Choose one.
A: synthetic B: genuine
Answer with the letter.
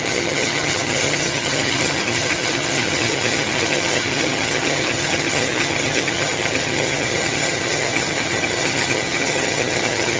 A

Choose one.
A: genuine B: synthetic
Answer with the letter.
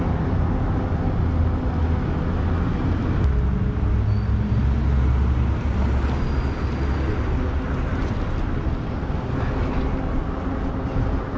A